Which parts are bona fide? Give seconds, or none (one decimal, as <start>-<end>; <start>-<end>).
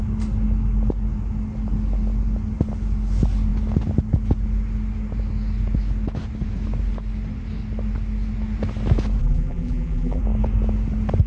0.0-9.2; 10.2-11.3